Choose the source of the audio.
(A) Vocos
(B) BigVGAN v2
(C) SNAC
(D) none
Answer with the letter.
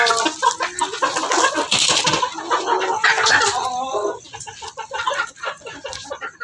D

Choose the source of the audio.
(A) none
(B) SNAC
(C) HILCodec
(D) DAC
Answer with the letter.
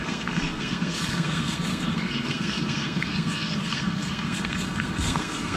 B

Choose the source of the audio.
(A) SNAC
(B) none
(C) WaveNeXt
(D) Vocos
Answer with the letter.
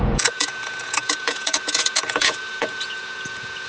D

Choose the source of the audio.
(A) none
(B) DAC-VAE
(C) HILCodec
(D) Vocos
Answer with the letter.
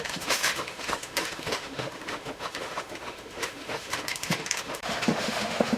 B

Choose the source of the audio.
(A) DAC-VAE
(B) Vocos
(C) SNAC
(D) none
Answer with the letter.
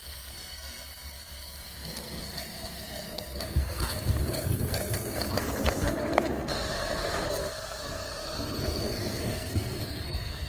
C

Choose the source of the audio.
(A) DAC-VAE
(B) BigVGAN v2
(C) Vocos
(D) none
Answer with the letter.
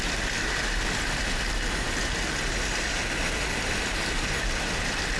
D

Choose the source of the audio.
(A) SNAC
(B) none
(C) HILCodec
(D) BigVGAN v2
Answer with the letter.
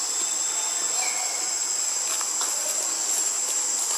B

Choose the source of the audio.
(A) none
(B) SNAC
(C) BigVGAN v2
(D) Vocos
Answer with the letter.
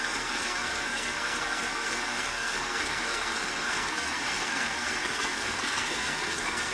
B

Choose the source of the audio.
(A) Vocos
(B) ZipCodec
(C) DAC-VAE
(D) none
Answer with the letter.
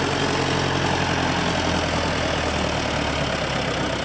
D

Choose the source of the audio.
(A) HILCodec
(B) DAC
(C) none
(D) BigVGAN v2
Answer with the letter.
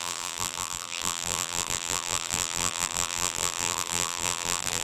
D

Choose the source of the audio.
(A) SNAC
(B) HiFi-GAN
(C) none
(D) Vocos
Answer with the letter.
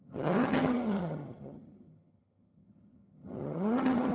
B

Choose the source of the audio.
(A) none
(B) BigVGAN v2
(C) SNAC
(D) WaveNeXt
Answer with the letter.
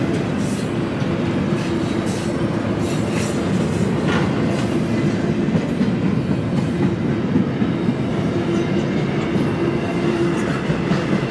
A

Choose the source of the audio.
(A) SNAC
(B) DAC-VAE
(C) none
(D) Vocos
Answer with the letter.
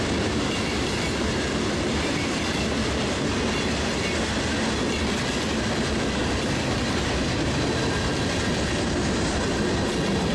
C